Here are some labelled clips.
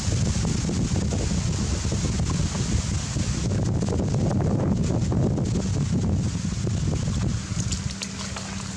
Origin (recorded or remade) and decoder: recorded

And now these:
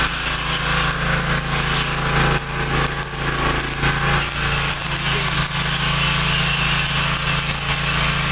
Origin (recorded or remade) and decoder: recorded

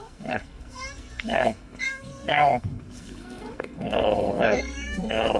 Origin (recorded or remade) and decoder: remade, codec, SNAC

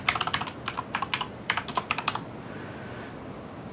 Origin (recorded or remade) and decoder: recorded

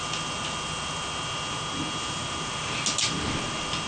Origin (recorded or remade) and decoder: recorded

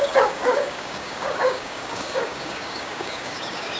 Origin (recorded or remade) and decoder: remade, codec, DAC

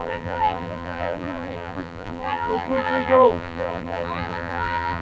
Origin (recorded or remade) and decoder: remade, vocoder, BigVGAN v2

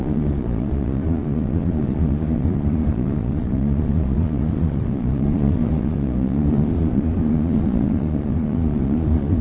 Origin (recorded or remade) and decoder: remade, vocoder, Vocos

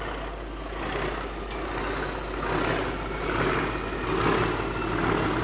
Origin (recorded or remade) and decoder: recorded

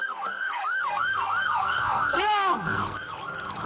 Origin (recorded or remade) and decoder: remade, codec, SNAC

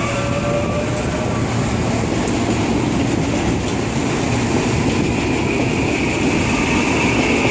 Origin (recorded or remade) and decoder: recorded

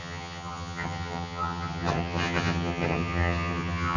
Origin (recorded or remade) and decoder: remade, vocoder, HiFi-GAN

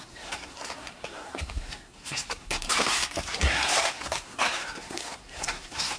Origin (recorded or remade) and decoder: remade, codec, SNAC